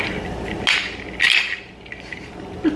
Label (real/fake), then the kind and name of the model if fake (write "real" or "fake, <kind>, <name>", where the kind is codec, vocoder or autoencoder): real